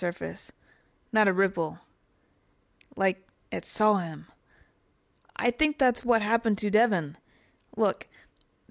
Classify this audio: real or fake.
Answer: real